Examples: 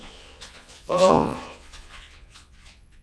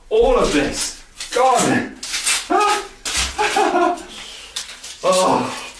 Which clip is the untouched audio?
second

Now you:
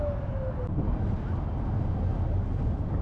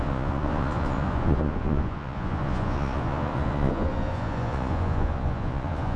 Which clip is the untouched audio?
first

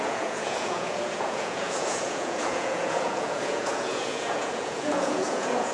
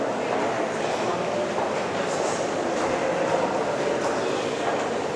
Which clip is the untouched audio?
second